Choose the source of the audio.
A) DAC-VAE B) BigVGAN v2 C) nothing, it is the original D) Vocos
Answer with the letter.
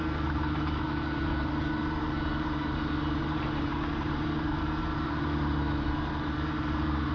B